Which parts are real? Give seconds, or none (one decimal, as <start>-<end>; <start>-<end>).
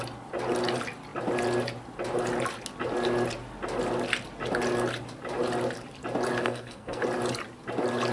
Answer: 0.0-6.4; 7.0-8.1